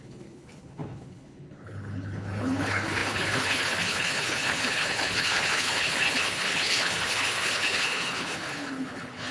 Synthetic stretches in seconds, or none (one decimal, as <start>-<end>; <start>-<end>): 0.0-9.3